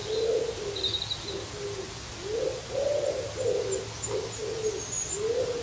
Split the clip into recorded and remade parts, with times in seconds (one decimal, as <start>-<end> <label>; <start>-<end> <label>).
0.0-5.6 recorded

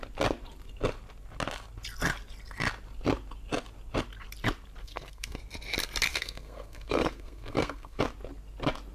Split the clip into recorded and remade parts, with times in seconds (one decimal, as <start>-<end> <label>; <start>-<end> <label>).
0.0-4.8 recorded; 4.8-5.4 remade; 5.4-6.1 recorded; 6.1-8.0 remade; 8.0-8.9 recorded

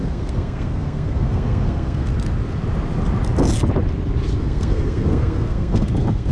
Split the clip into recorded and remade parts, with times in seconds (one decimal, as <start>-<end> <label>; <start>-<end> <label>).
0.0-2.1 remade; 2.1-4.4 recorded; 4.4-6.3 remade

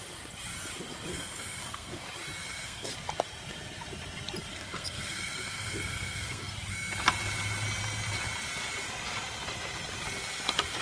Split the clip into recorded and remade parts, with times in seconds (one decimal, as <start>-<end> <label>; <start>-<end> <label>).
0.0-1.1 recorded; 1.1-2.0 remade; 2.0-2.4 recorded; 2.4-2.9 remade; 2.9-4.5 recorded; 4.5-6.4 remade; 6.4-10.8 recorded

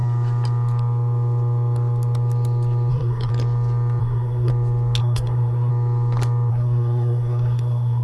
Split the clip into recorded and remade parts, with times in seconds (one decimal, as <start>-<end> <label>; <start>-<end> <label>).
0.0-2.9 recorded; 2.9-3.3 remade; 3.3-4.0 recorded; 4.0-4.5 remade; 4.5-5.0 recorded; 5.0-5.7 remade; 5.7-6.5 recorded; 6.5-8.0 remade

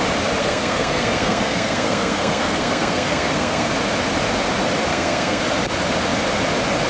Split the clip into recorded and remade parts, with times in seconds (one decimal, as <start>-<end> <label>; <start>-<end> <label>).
0.0-0.4 recorded; 0.4-3.7 remade; 3.7-4.9 recorded; 4.9-5.4 remade; 5.4-6.9 recorded

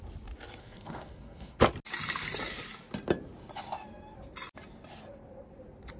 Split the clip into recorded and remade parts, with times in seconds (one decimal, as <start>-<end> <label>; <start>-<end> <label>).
0.0-0.6 recorded; 0.6-1.6 remade; 1.6-6.0 recorded

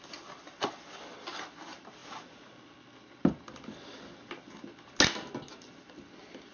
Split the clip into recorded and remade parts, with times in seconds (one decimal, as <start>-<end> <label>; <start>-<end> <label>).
0.0-6.5 recorded